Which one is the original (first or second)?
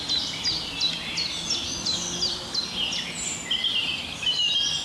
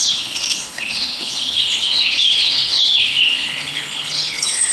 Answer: first